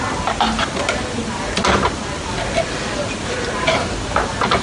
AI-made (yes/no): no